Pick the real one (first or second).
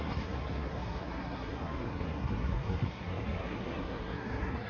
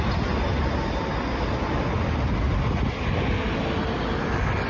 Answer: second